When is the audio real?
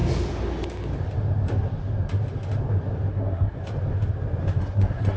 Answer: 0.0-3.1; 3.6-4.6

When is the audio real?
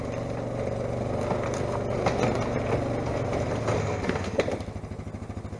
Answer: 0.0-3.8; 4.4-5.6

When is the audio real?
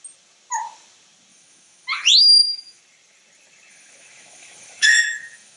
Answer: 0.0-1.3; 2.8-3.7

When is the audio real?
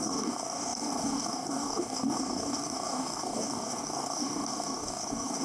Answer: none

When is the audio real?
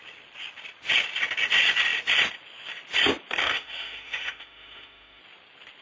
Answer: 0.0-3.4; 5.2-5.8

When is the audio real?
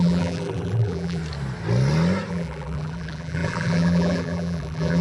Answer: 1.2-2.3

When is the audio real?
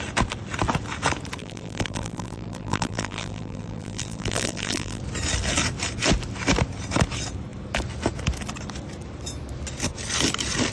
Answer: 0.0-1.4; 5.0-10.7